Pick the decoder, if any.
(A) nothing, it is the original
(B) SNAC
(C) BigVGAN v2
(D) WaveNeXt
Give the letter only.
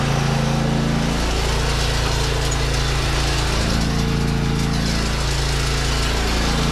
A